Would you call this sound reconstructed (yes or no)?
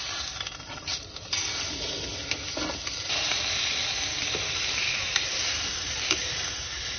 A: no